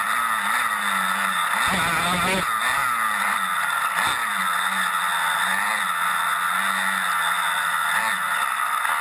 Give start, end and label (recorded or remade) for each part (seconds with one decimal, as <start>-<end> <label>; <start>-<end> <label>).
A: 0.0-9.0 recorded